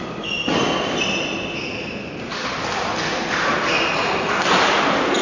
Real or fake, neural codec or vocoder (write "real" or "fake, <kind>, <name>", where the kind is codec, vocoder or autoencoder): real